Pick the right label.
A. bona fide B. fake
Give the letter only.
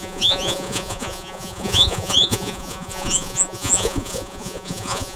B